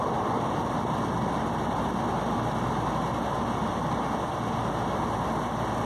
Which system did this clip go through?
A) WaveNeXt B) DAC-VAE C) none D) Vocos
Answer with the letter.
C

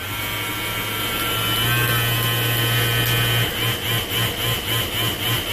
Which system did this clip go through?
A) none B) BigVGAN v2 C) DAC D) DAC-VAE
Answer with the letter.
A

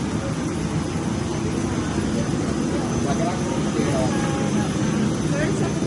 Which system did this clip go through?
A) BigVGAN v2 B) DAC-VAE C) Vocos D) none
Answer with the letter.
D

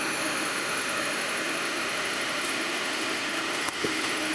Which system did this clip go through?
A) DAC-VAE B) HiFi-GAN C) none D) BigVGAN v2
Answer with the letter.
A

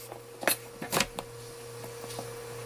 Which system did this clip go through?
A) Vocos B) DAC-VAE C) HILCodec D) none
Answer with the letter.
D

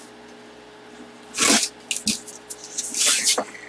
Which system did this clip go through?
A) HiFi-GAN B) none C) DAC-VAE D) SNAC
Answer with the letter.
B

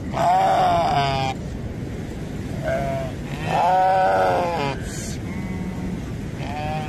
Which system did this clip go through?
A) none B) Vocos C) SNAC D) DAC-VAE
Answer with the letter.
A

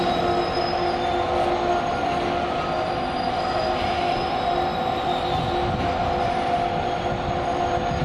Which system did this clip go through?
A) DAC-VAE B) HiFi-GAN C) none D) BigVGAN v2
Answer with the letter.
C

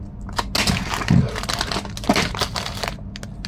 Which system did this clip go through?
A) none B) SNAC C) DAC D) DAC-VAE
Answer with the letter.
A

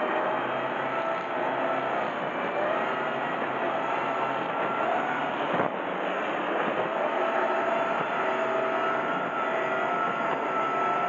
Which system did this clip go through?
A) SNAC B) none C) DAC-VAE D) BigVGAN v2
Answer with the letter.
B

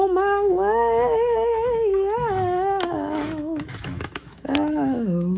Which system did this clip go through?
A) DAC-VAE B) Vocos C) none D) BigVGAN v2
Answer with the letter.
A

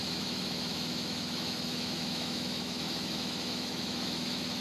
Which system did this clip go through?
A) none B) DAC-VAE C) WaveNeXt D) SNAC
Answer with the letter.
B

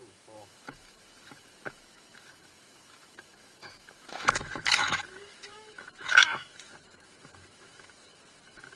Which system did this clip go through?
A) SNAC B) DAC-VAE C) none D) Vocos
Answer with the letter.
B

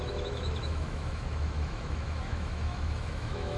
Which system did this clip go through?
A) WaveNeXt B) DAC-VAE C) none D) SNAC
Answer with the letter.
B